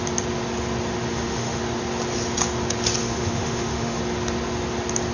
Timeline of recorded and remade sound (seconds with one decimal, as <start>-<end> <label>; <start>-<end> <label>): 0.0-1.1 recorded; 1.1-1.6 remade; 1.6-3.0 recorded; 3.0-4.0 remade; 4.0-5.1 recorded